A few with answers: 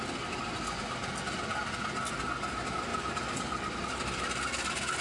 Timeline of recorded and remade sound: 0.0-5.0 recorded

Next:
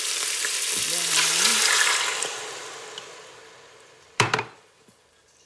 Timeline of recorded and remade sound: 0.0-1.5 recorded; 1.5-4.8 remade; 4.8-5.5 recorded

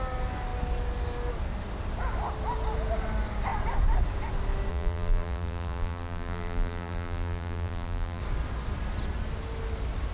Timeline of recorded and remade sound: 0.0-4.7 recorded; 4.7-8.2 remade; 8.2-10.1 recorded

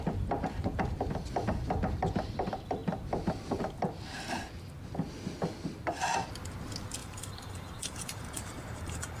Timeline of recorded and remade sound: 0.0-7.0 recorded; 7.0-9.2 remade